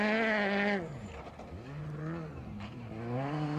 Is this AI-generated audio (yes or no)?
no